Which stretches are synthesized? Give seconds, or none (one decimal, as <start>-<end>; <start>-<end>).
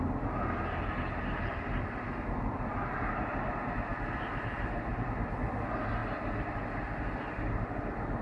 none